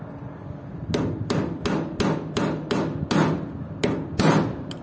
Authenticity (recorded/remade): recorded